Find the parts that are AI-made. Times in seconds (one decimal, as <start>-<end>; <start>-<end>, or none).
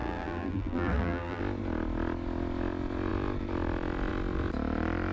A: 0.0-1.4